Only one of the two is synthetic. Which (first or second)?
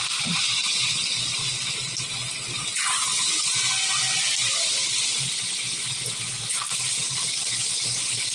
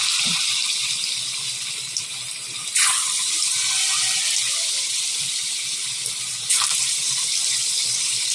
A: second